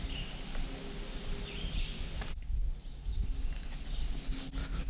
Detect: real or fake real